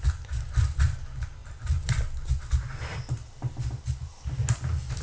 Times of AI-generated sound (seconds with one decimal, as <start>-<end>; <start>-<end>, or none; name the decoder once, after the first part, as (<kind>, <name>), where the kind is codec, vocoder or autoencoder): none